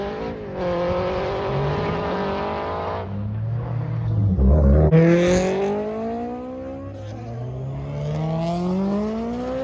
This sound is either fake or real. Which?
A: real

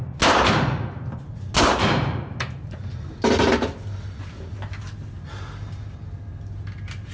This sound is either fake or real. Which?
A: real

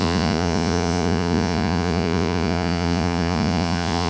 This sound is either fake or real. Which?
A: fake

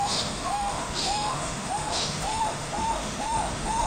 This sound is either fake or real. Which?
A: fake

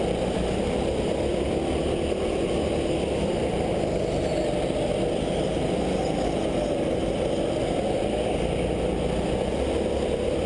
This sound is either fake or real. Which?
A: real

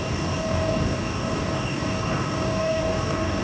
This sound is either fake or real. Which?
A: fake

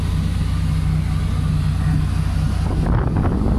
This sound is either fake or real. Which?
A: real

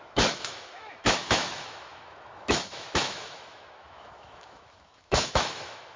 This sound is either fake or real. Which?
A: fake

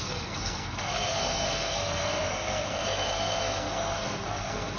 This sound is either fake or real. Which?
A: fake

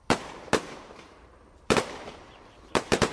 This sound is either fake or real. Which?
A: fake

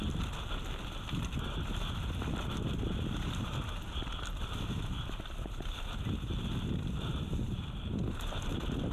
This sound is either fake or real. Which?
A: real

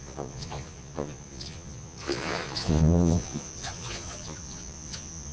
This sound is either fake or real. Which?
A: fake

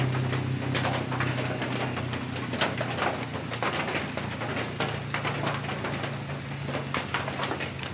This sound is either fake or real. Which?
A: real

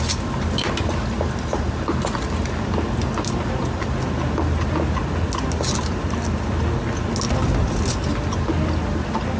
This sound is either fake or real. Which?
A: real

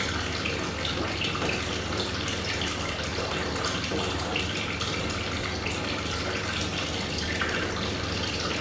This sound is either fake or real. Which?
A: real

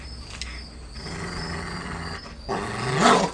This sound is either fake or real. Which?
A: real